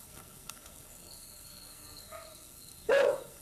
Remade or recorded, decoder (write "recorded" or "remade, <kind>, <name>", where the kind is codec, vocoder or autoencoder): remade, codec, SNAC